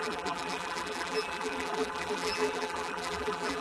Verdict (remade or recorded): remade